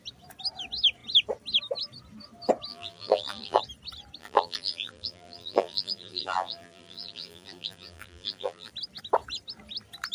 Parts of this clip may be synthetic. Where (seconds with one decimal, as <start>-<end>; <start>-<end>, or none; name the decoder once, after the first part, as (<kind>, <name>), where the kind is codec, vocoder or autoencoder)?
2.7-3.6 (vocoder, BigVGAN v2); 4.2-8.7